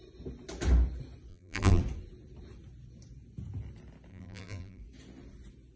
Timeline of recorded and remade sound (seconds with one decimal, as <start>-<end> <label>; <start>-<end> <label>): 0.0-1.3 recorded; 1.3-1.8 remade; 1.8-4.1 recorded; 4.1-4.8 remade; 4.8-5.8 recorded